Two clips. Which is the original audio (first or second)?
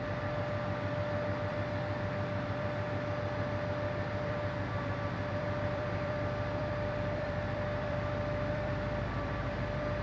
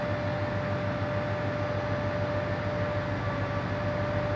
second